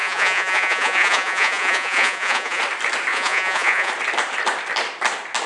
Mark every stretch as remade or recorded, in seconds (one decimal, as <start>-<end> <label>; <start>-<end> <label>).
0.0-2.6 remade; 2.6-3.1 recorded; 3.1-3.9 remade; 3.9-5.5 recorded